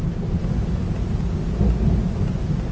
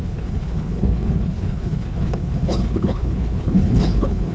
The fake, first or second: second